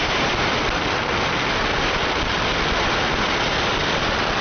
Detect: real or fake real